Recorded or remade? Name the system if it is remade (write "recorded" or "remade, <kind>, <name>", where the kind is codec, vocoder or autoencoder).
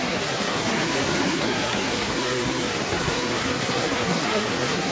remade, codec, SNAC